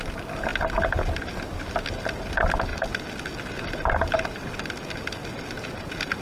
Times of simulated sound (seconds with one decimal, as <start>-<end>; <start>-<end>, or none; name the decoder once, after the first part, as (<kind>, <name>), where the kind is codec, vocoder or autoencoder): none